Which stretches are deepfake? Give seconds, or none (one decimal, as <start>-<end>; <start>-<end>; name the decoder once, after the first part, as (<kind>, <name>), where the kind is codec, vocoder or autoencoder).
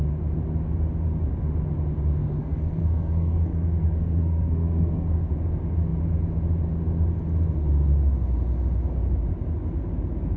2.4-5.3 (codec, SNAC)